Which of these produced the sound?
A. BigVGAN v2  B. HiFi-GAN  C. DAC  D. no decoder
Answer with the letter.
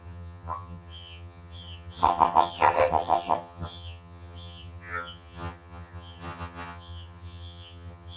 B